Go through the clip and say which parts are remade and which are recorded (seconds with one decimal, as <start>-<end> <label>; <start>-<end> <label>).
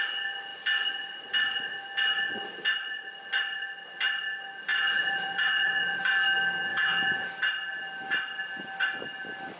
0.0-4.7 recorded; 4.7-6.0 remade; 6.0-6.7 recorded; 6.7-7.3 remade; 7.3-9.6 recorded